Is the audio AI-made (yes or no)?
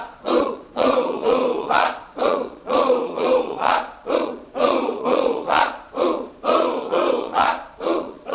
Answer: yes